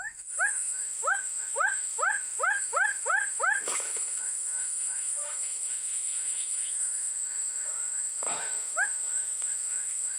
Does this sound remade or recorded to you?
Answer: remade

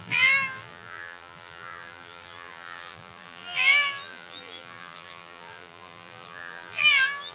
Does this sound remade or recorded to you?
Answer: remade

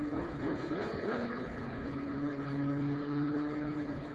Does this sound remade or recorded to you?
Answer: remade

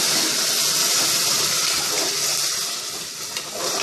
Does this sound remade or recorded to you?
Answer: recorded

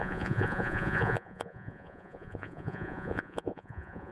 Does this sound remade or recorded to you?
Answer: remade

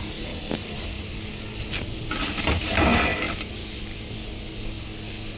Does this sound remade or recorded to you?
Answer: recorded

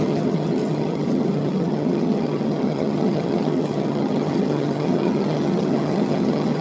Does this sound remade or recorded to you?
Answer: remade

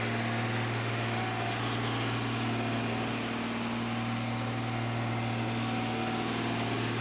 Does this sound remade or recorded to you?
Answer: recorded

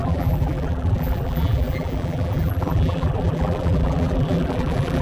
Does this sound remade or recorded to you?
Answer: remade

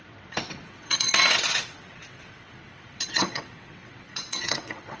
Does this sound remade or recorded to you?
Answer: remade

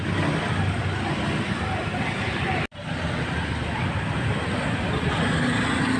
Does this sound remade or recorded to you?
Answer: recorded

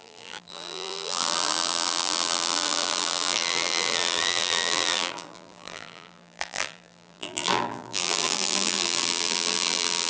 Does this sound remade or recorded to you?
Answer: remade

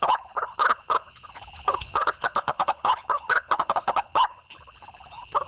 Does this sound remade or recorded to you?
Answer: remade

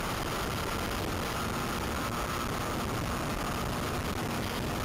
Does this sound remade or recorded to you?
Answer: recorded